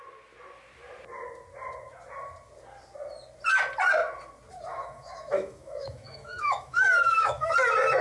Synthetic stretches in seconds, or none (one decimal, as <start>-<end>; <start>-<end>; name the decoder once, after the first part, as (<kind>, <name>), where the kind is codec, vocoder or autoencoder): 4.7-7.5 (autoencoder, DAC-VAE)